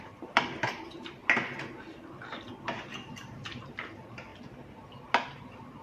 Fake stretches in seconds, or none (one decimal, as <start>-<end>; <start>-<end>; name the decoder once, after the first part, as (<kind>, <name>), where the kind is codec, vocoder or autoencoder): 0.0-1.2 (vocoder, BigVGAN v2); 3.1-4.3; 5.3-5.8